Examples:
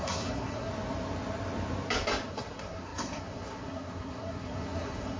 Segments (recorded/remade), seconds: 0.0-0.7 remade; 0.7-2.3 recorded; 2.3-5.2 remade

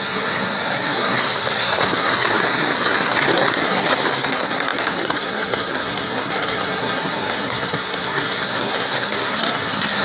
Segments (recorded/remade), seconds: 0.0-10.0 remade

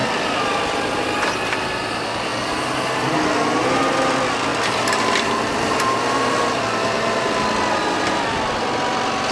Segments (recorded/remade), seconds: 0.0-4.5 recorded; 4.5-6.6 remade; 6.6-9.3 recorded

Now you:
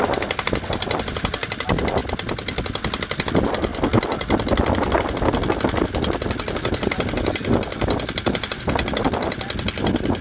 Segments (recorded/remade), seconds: 0.0-10.2 recorded

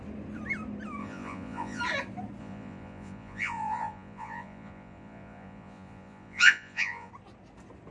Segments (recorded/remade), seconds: 0.0-1.0 recorded; 1.0-1.8 remade; 1.8-2.4 recorded; 2.4-7.1 remade; 7.1-7.9 recorded

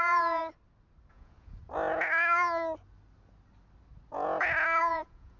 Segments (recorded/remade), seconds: 0.0-0.4 remade; 0.4-1.1 recorded; 1.1-1.6 remade; 1.6-4.8 recorded; 4.8-5.4 remade

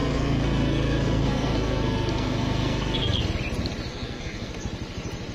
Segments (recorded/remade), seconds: 0.0-3.2 remade; 3.2-3.9 recorded; 3.9-4.5 remade; 4.5-5.3 recorded